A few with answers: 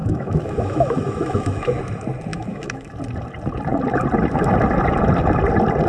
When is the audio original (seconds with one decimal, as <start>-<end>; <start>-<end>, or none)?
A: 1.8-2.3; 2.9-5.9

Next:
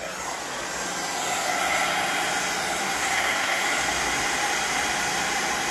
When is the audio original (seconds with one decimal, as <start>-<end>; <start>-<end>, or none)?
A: 0.0-2.8; 3.6-5.7

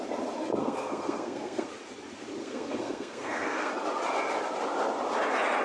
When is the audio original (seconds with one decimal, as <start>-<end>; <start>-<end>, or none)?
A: 0.0-0.6; 1.7-2.4; 3.7-5.6

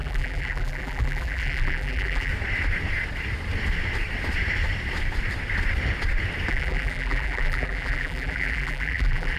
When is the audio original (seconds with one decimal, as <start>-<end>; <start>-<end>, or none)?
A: 2.3-6.5

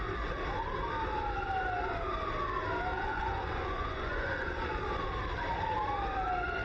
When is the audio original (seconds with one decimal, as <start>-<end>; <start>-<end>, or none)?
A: 0.0-2.9; 4.8-6.6

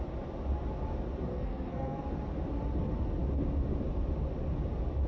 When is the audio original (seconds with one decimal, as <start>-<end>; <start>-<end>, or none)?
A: 0.0-1.3; 2.0-5.1

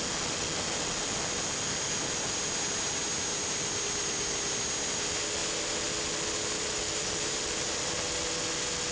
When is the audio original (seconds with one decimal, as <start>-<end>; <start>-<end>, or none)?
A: 0.0-8.9